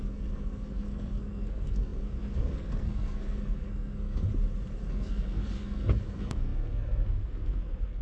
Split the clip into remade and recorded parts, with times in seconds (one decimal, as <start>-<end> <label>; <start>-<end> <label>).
0.0-4.3 remade; 4.3-4.9 recorded; 4.9-8.0 remade

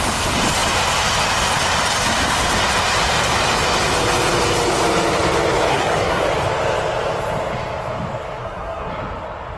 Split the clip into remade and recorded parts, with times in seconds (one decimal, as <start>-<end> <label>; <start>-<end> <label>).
0.0-5.7 recorded; 5.7-6.2 remade; 6.2-8.4 recorded; 8.4-8.9 remade; 8.9-9.6 recorded

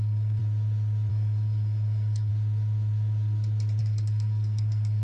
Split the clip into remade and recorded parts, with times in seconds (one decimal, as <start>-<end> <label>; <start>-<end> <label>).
0.0-0.4 remade; 0.4-1.1 recorded; 1.1-2.3 remade; 2.3-3.8 recorded; 3.8-5.0 remade

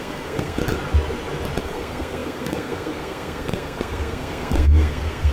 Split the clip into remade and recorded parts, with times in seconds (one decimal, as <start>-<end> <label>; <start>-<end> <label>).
0.0-0.6 remade; 0.6-1.6 recorded; 1.6-5.3 remade

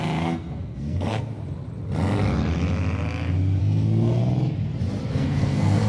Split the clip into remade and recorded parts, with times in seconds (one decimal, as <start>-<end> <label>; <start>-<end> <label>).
0.0-1.3 remade; 1.3-3.6 recorded; 3.6-4.2 remade; 4.2-5.1 recorded; 5.1-5.9 remade